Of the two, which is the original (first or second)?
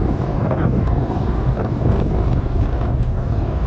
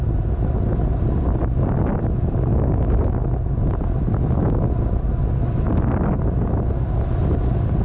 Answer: second